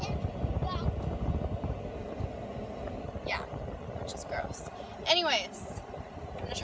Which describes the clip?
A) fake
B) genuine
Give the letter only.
B